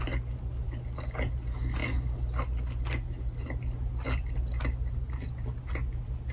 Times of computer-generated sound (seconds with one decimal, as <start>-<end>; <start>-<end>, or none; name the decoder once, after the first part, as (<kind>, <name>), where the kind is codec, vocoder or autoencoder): none